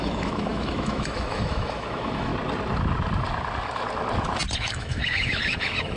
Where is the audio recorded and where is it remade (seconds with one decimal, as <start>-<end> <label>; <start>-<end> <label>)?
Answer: 0.0-2.3 remade; 2.3-4.6 recorded; 4.6-6.0 remade